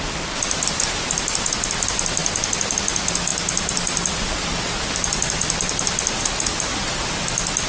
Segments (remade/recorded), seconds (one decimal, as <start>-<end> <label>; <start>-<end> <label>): 0.0-7.7 recorded